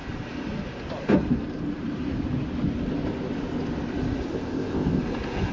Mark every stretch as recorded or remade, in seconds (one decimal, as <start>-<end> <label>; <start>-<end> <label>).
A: 0.0-4.3 recorded; 4.3-5.0 remade; 5.0-5.5 recorded